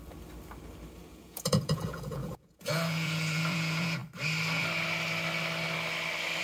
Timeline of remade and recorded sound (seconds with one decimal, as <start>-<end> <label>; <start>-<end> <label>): 0.0-1.1 recorded; 1.1-4.0 remade; 4.0-6.4 recorded